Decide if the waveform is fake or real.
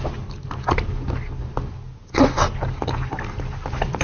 real